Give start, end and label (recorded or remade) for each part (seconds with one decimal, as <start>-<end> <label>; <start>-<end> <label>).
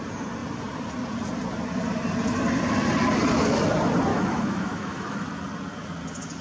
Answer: 0.0-4.1 recorded; 4.1-5.4 remade; 5.4-6.4 recorded